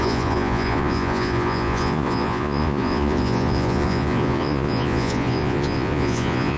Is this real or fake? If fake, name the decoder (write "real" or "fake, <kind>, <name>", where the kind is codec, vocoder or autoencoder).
fake, vocoder, Vocos